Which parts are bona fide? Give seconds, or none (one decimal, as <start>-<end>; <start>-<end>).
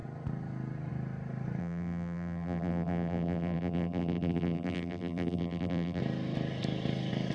0.0-1.6; 6.0-7.3